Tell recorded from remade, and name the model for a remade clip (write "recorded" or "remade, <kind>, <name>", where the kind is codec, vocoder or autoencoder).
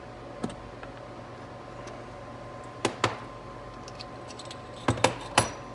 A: recorded